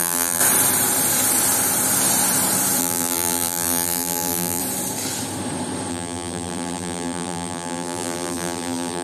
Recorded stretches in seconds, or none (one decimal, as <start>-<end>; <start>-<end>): 0.4-2.8; 4.6-5.9